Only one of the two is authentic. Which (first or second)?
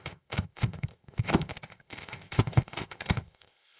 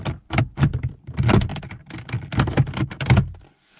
second